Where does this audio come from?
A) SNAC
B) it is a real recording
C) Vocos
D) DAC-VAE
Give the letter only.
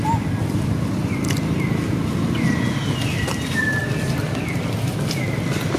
B